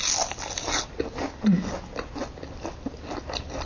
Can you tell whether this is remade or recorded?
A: recorded